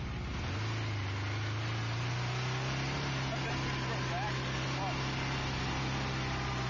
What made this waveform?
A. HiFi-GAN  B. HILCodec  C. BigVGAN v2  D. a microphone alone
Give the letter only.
D